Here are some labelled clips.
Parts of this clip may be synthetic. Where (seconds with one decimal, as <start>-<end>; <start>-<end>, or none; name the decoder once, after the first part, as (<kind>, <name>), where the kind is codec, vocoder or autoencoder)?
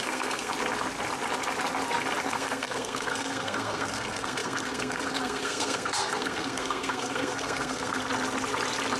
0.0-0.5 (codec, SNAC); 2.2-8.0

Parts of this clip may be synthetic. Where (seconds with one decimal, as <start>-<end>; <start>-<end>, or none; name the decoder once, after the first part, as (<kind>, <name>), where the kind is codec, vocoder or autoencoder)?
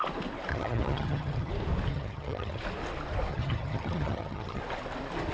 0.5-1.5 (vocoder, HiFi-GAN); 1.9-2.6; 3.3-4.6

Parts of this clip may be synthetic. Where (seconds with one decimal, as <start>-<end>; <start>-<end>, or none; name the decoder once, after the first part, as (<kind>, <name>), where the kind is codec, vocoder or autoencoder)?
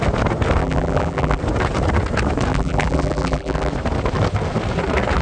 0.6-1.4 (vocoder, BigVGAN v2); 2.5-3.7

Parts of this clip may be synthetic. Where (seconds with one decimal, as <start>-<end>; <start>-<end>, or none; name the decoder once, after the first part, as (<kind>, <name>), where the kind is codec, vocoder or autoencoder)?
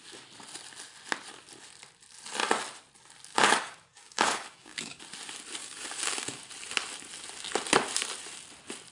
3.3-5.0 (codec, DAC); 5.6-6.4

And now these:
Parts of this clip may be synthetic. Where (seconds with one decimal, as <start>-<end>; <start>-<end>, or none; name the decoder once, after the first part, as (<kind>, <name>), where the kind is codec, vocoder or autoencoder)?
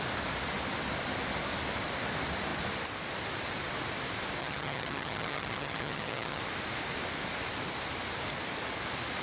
4.4-6.4 (vocoder, HiFi-GAN)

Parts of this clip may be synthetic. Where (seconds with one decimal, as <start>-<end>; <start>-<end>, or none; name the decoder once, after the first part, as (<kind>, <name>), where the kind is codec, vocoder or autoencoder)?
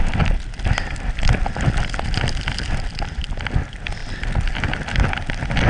none